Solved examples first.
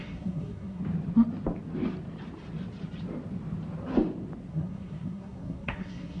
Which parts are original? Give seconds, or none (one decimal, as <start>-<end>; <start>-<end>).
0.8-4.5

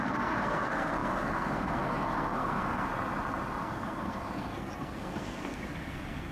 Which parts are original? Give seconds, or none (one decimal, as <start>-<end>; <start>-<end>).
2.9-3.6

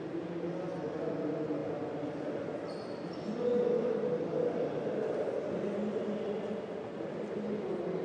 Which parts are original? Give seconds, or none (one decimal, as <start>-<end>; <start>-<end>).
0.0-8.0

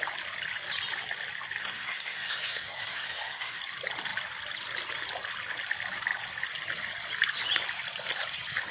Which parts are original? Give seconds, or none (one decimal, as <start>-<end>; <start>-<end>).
0.0-1.6; 3.6-8.7

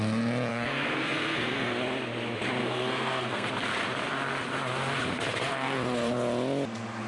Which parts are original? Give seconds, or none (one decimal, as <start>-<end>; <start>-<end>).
0.0-0.5; 1.7-2.6; 3.5-7.1

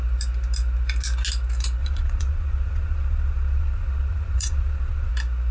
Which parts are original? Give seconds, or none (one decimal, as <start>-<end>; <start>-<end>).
0.0-1.8; 5.1-5.5